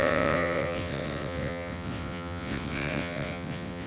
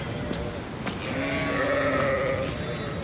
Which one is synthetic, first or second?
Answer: first